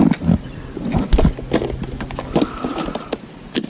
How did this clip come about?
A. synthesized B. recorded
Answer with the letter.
B